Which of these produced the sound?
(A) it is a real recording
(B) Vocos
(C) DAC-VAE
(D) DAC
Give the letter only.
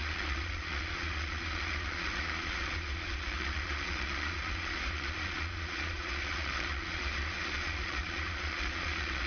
B